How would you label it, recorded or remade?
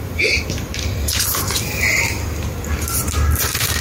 recorded